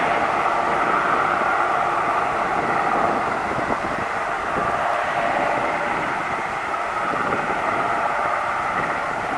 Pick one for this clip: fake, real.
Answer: real